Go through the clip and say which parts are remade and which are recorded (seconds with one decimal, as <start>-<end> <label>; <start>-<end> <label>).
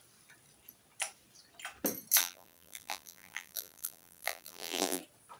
0.0-2.2 recorded; 2.2-5.0 remade; 5.0-5.4 recorded